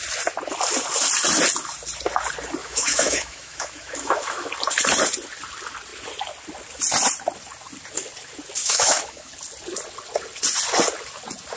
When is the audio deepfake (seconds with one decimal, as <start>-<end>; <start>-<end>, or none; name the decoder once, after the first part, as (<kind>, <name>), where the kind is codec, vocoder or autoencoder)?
2.6-4.5 (autoencoder, DAC-VAE); 8.6-9.3